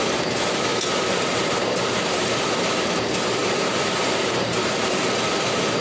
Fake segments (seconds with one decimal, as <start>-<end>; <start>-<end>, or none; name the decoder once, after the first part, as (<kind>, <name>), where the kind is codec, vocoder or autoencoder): 0.7-2.4 (vocoder, BigVGAN v2); 3.4-5.0